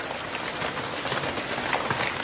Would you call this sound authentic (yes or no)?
yes